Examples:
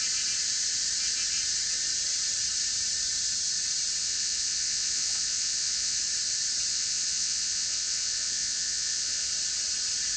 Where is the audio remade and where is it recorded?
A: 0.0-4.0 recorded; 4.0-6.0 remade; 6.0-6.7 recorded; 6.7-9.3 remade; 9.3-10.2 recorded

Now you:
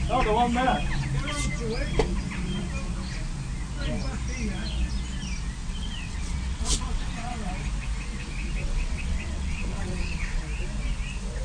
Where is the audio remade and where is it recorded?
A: 0.0-5.6 recorded; 5.6-7.5 remade; 7.5-8.6 recorded; 8.6-10.4 remade; 10.4-11.4 recorded

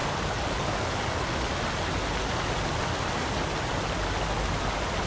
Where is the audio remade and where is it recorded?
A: 0.0-5.1 recorded

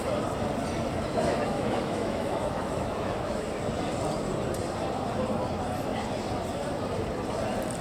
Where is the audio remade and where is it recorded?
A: 0.0-1.1 recorded; 1.1-3.4 remade; 3.4-7.8 recorded

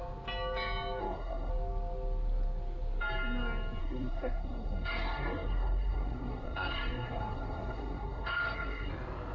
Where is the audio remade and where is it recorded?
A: 0.0-1.0 recorded; 1.0-1.5 remade; 1.5-3.8 recorded; 3.8-8.9 remade; 8.9-9.3 recorded

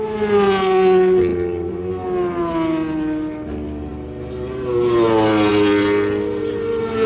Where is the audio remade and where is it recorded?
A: 0.0-7.1 recorded